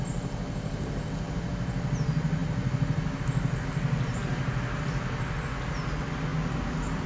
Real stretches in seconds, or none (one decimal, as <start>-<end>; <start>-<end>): 0.0-7.1